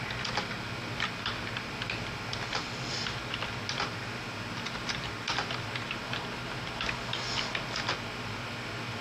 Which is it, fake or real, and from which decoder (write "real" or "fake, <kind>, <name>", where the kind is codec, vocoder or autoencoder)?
real